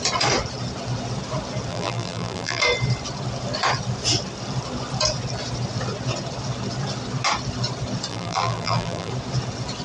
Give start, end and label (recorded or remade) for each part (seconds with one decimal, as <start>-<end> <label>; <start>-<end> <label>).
0.0-1.7 recorded; 1.7-2.6 remade; 2.6-8.1 recorded; 8.1-9.1 remade; 9.1-9.8 recorded